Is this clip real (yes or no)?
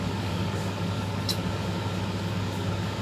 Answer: no